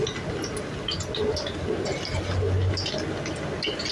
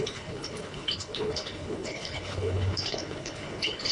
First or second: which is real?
first